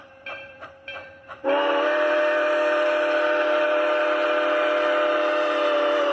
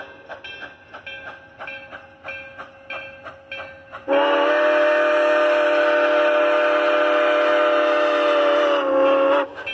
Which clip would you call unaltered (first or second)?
second